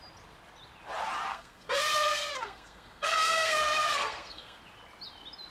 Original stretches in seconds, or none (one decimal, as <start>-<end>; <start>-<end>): 0.0-1.3; 4.6-5.5